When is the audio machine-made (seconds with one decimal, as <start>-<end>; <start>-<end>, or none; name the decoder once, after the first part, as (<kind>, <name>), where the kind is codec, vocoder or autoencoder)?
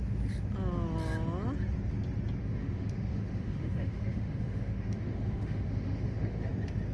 2.4-6.5 (autoencoder, DAC-VAE)